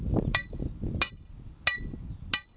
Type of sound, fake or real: real